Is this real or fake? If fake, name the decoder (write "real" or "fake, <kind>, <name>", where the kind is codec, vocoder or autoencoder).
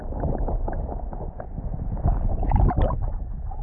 real